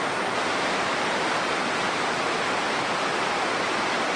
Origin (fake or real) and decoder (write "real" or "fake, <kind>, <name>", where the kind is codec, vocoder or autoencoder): real